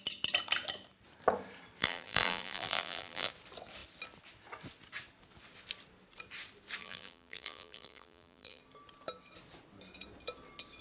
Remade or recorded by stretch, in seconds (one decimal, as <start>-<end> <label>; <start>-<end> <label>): 0.0-1.8 recorded; 1.8-3.3 remade; 3.3-6.8 recorded; 6.8-8.6 remade; 8.6-10.8 recorded